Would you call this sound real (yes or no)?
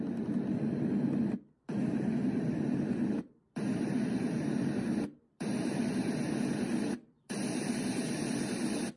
no